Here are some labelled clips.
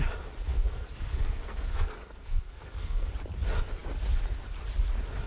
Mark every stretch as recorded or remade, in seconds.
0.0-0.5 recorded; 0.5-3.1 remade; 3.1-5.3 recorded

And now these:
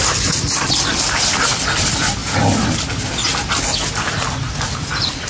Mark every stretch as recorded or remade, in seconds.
0.0-5.3 recorded

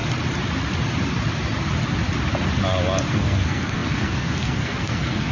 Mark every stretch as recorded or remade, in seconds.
0.0-3.1 recorded; 3.1-5.3 remade

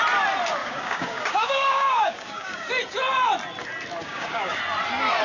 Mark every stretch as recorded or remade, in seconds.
0.0-0.6 recorded; 0.6-2.7 remade; 2.7-4.0 recorded; 4.0-4.6 remade; 4.6-5.2 recorded

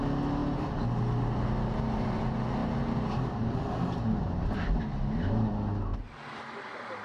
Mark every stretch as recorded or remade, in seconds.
0.0-2.6 recorded; 2.6-4.6 remade; 4.6-5.9 recorded; 5.9-7.0 remade

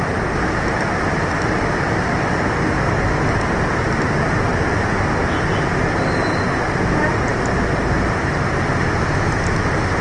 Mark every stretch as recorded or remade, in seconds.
0.0-10.0 recorded

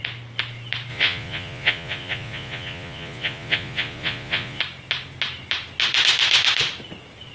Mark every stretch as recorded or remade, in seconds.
0.0-0.9 recorded; 0.9-4.6 remade; 4.6-7.3 recorded

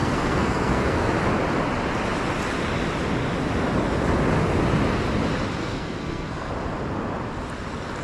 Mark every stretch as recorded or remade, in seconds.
0.0-1.1 remade; 1.1-5.6 recorded; 5.6-6.5 remade; 6.5-8.0 recorded